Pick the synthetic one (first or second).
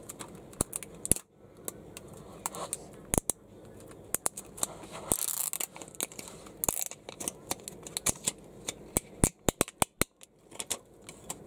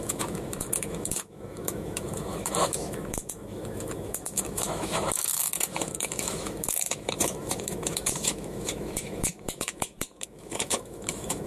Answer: second